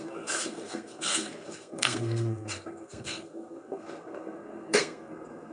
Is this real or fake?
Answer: fake